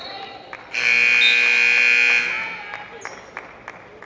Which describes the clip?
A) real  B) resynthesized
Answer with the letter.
A